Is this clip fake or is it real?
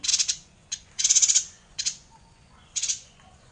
fake